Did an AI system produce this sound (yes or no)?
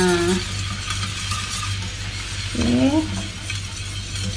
no